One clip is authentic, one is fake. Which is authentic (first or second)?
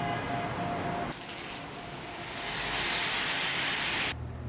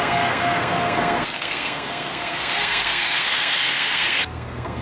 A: first